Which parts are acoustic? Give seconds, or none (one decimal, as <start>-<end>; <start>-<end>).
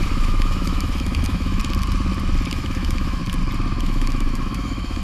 1.6-2.5; 3.2-3.8